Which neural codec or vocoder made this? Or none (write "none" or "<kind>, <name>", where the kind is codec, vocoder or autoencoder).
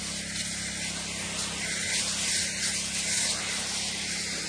none